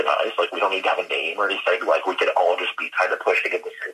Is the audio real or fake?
real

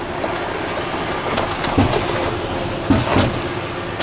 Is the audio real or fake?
real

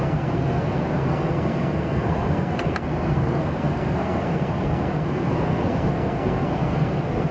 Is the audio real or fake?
fake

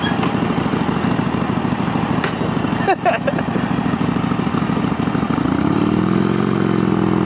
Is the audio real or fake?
real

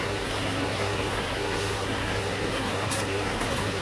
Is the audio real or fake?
fake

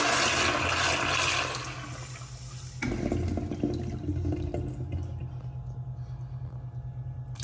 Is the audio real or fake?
real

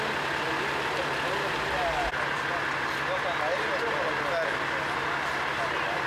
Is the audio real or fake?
real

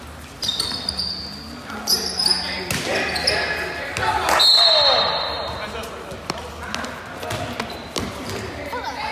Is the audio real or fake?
real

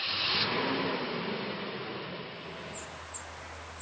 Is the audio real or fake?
real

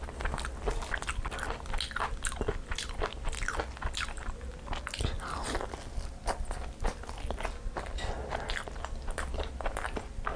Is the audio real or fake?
real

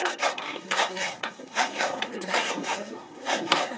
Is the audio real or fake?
fake